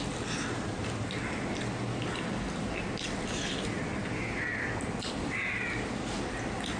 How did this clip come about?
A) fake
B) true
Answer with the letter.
B